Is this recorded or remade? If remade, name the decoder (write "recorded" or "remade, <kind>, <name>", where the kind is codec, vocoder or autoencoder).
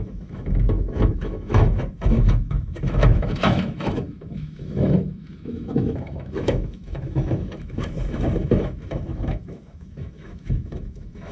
remade, autoencoder, DAC-VAE